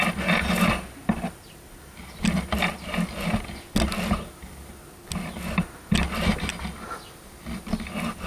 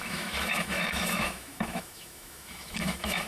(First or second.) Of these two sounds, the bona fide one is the first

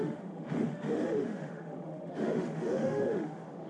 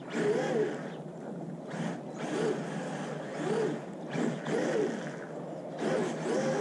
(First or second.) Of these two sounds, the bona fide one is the second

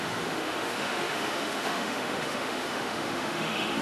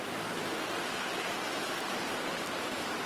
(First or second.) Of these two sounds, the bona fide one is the second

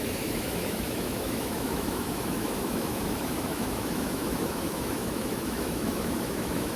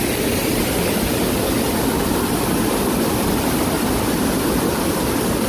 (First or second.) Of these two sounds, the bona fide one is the second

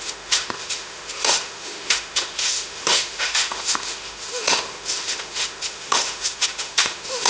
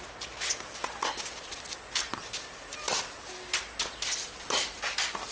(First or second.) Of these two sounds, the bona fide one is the second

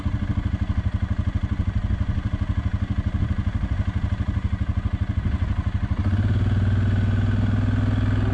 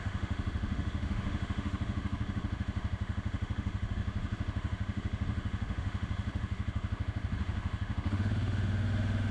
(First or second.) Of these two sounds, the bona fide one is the first